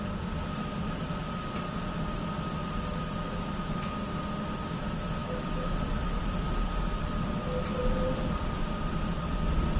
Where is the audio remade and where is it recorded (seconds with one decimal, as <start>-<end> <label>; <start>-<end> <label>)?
0.0-2.6 recorded; 2.6-4.0 remade; 4.0-5.2 recorded; 5.2-6.2 remade; 6.2-9.8 recorded